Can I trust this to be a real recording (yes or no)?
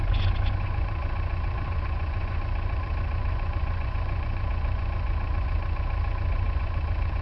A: no